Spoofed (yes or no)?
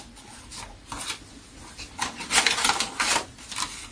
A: no